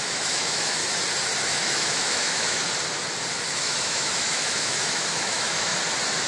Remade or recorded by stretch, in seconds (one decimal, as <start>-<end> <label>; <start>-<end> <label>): 0.0-0.8 remade; 0.8-1.5 recorded; 1.5-2.6 remade; 2.6-3.5 recorded; 3.5-5.7 remade; 5.7-6.3 recorded